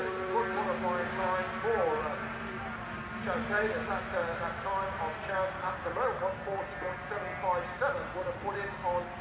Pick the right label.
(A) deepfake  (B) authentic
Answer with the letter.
B